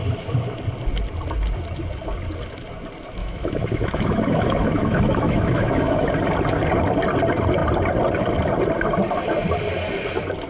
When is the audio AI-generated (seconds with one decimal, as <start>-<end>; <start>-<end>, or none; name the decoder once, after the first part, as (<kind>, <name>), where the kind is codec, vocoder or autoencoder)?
0.0-0.6 (autoencoder, DAC-VAE); 3.2-6.1